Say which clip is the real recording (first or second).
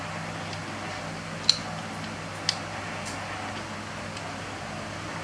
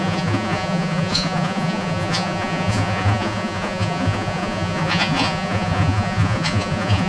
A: first